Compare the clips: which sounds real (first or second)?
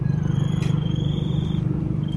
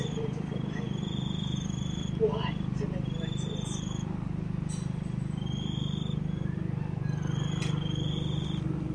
second